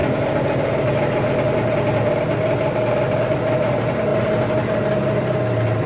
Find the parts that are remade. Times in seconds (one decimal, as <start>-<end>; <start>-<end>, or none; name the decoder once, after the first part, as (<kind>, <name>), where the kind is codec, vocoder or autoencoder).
none